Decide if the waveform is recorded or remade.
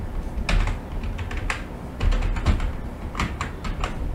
recorded